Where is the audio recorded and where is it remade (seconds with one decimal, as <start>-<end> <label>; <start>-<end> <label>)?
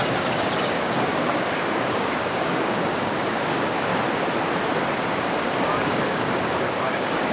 0.0-3.9 remade; 3.9-5.2 recorded; 5.2-7.3 remade